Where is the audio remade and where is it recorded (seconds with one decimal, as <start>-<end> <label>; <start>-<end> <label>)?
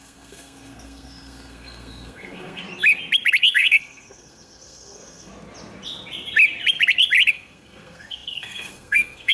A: 0.0-2.6 remade; 2.6-3.4 recorded; 3.4-5.3 remade; 5.3-7.3 recorded; 7.3-9.3 remade